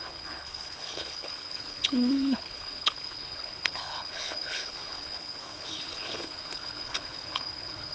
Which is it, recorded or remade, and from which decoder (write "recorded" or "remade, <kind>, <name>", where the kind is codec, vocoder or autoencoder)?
remade, codec, HILCodec